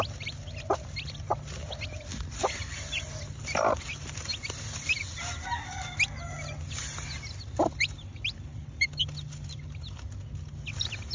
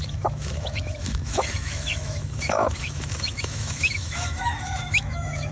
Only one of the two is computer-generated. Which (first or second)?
second